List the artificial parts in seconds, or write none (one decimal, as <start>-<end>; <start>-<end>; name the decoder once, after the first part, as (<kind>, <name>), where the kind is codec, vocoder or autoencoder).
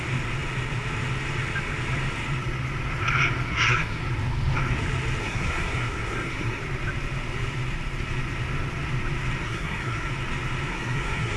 3.5-4.0 (codec, SNAC); 5.2-6.6; 9.4-10.1; 10.7-11.4